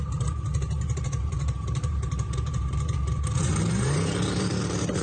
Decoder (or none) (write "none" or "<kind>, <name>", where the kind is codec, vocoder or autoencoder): vocoder, BigVGAN v2